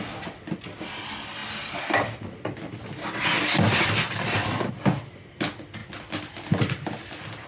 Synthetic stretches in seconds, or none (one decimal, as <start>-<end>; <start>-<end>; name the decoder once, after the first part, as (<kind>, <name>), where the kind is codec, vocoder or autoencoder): none